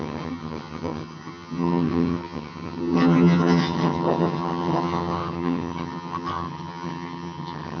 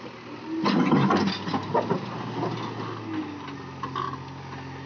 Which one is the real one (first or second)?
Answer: second